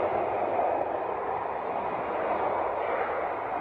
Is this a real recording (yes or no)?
yes